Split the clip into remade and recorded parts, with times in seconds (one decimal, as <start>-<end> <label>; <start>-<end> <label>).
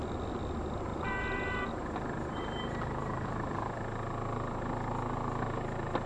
0.0-0.9 recorded; 0.9-3.8 remade; 3.8-6.1 recorded